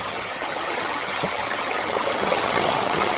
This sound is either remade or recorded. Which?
remade